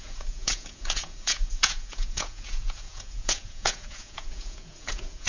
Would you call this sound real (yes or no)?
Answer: no